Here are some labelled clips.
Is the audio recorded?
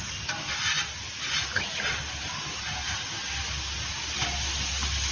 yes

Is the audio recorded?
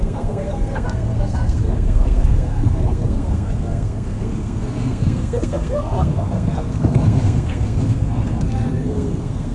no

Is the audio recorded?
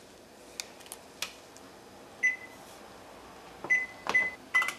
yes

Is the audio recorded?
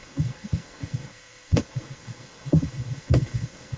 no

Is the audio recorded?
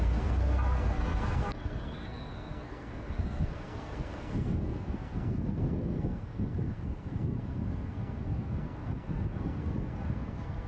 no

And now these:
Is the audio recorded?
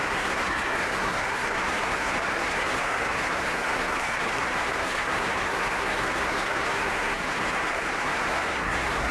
no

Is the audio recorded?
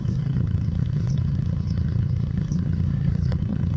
no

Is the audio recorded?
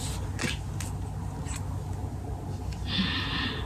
yes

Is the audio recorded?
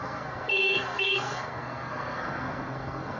no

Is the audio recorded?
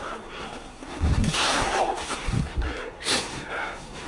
no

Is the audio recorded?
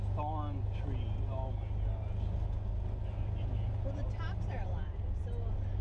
yes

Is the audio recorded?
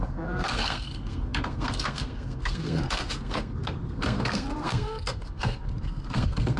no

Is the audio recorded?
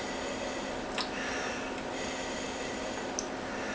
yes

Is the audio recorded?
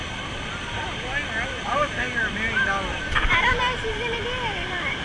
yes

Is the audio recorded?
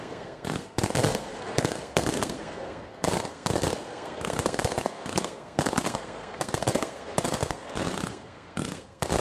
no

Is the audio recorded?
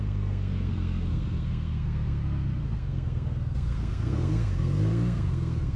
no